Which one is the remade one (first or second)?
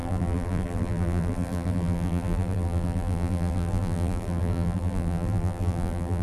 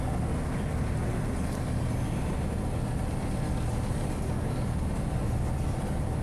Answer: first